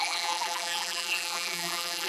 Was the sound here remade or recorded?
remade